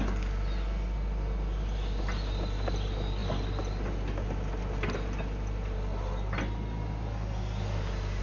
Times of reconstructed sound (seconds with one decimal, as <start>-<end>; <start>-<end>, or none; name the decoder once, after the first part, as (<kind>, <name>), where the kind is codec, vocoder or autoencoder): none